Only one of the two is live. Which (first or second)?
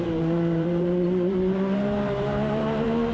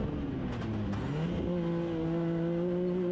second